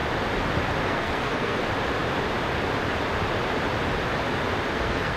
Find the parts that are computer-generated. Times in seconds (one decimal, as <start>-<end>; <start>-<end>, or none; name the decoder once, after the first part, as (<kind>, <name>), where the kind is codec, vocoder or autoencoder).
0.8-1.6 (codec, SNAC); 4.7-5.2